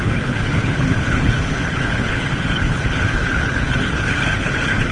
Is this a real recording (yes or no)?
no